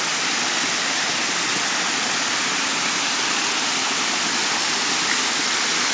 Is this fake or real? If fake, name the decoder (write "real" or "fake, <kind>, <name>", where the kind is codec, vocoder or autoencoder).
real